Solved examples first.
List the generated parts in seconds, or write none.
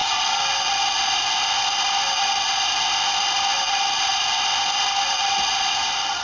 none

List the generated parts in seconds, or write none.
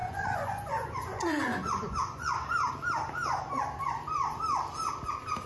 0.0-2.7 (vocoder, Vocos); 3.8-4.4